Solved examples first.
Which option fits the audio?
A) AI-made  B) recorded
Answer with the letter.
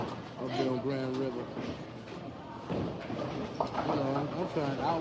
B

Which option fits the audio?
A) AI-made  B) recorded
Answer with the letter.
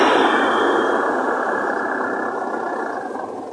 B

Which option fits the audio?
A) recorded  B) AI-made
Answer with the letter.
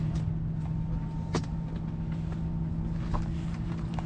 A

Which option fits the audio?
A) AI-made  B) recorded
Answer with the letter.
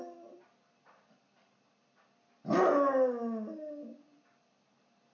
B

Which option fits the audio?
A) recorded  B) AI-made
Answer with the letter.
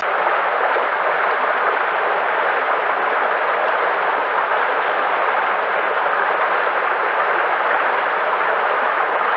A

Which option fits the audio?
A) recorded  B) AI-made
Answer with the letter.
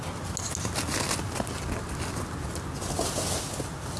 A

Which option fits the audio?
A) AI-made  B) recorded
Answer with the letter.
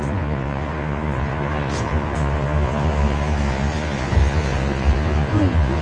A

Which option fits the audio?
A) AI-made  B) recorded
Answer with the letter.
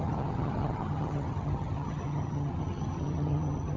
A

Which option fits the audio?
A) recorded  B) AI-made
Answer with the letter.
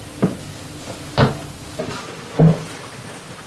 A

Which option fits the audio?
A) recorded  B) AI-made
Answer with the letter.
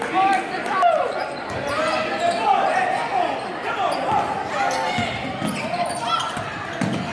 A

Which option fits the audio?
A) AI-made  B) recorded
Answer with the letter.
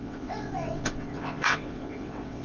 A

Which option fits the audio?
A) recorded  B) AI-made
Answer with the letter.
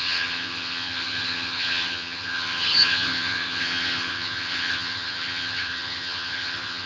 B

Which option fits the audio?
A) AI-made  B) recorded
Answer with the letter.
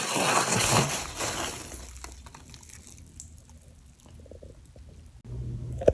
B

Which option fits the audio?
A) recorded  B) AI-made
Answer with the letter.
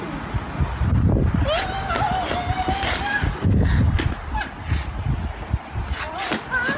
A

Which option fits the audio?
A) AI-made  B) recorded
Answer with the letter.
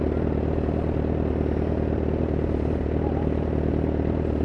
B